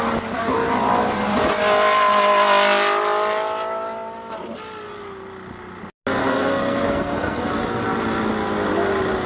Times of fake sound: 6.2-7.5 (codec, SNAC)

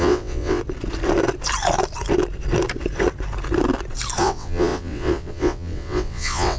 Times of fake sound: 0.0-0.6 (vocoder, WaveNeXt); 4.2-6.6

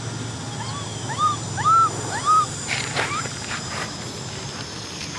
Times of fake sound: 0.9-3.8 (vocoder, BigVGAN v2)